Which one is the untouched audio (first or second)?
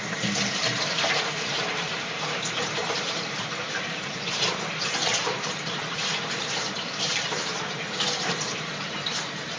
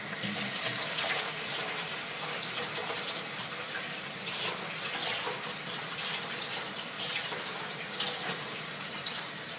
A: second